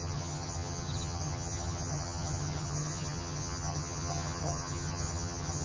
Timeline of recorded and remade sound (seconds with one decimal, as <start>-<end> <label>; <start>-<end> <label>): 0.0-5.6 remade